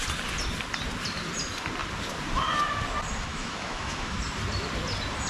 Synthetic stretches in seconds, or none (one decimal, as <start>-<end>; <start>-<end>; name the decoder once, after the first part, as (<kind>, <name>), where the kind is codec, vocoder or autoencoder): 3.3-4.2 (autoencoder, DAC-VAE)

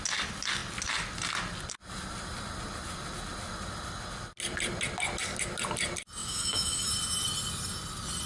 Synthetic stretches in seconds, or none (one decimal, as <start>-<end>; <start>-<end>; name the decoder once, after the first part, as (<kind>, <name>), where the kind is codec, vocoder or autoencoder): 6.2-6.9 (autoencoder, DAC-VAE)

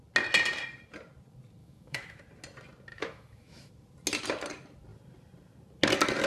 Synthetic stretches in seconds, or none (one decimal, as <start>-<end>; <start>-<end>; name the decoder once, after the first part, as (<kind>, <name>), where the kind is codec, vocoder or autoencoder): 1.6-2.2 (autoencoder, DAC-VAE); 2.9-3.7